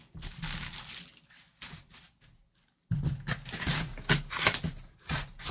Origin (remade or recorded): recorded